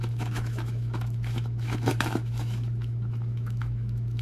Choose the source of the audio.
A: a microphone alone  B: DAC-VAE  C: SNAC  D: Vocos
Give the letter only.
B